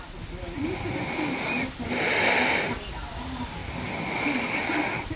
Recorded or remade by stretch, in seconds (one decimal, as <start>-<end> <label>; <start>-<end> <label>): 0.0-5.2 recorded